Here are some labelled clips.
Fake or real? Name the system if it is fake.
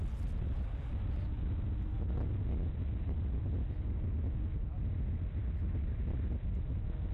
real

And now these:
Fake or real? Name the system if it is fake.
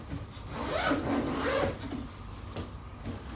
real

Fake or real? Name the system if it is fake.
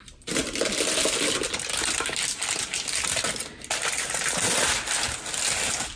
real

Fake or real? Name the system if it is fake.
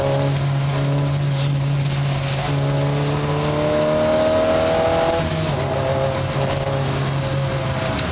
real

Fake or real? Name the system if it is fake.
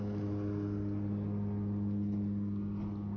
real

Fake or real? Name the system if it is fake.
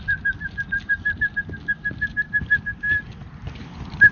real